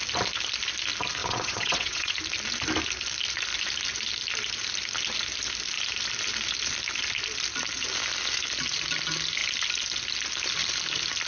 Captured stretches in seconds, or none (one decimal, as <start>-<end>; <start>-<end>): 0.0-1.2; 2.1-11.3